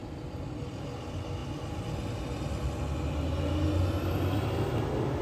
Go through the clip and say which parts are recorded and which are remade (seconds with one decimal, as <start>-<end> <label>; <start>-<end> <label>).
0.0-5.2 recorded